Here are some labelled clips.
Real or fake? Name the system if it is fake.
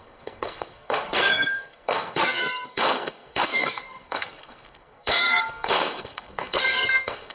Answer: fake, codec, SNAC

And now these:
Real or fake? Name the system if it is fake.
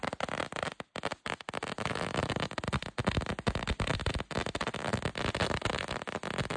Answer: real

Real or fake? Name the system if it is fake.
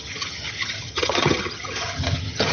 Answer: fake, vocoder, HiFi-GAN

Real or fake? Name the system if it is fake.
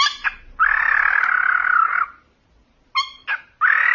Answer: real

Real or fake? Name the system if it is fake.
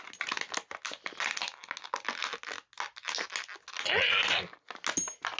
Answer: real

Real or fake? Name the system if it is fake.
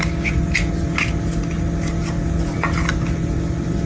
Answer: real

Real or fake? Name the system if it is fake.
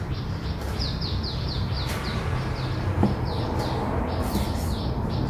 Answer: real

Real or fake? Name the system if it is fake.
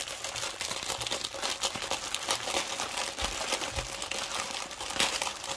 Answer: real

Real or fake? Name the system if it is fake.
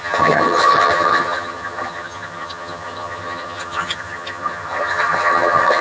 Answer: fake, vocoder, HiFi-GAN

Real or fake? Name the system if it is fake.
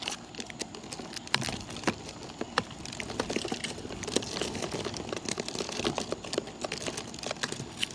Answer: real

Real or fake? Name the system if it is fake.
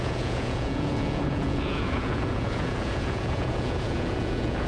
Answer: fake, vocoder, Vocos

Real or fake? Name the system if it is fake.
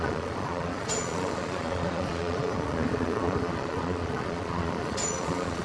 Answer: fake, vocoder, Vocos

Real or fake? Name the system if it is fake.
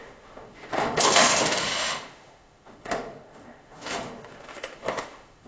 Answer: fake, autoencoder, DAC-VAE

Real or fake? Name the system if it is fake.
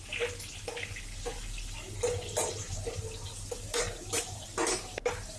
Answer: real